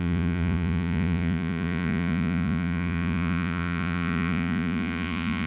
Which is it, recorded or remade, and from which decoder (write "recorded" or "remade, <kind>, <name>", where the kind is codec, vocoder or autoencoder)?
remade, vocoder, Vocos